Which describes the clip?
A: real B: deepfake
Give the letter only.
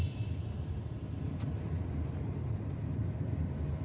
A